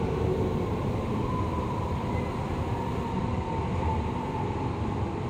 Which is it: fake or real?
real